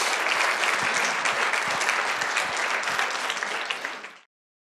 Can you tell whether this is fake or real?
real